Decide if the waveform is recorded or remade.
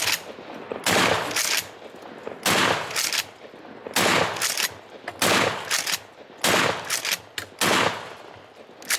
recorded